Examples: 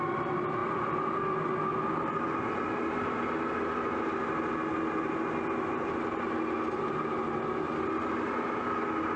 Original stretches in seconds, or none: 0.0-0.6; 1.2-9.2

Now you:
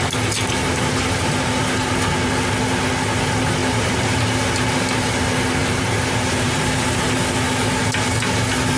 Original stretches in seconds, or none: 0.0-0.6; 1.7-3.6; 4.2-5.6; 7.1-8.8

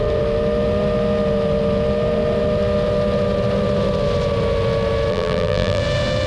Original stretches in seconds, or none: 0.0-5.1; 5.8-6.3

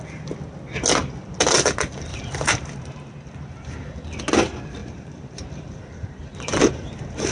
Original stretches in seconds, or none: 0.0-2.1; 3.1-4.8

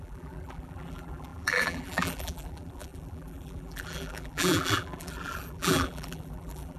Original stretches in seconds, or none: none